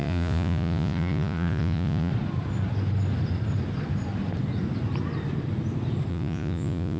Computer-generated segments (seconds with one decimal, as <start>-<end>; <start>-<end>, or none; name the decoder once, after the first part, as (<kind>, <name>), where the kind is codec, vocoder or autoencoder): 0.0-2.1 (vocoder, Vocos); 6.1-7.0